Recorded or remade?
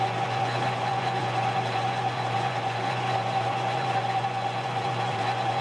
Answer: remade